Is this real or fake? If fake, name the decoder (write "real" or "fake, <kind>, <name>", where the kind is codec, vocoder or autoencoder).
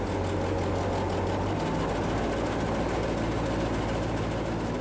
real